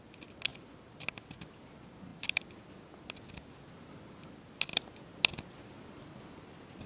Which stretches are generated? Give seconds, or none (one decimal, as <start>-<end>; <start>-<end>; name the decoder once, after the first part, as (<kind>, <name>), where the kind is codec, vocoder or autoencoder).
none